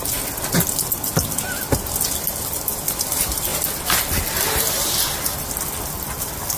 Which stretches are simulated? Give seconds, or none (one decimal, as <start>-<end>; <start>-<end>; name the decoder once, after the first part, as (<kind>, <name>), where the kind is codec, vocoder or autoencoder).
none